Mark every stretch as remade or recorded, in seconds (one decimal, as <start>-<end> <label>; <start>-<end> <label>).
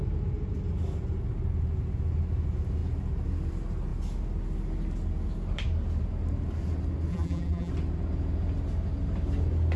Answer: 0.0-7.1 recorded; 7.1-7.7 remade; 7.7-9.8 recorded